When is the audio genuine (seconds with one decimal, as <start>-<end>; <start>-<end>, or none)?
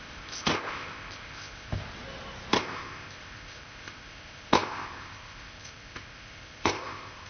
1.8-2.6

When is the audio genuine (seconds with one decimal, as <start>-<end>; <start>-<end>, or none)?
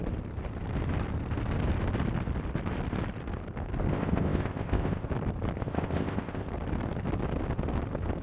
0.0-3.9; 5.1-5.6; 6.5-8.2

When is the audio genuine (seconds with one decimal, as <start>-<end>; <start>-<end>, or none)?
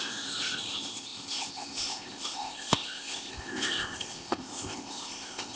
none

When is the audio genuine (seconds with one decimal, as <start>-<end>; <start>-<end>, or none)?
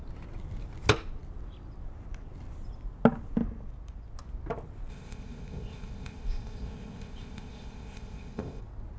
0.0-4.9; 8.6-9.0